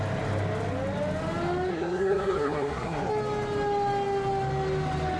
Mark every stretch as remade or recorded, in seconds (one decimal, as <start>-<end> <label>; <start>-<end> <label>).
0.0-1.7 recorded; 1.7-3.1 remade; 3.1-5.2 recorded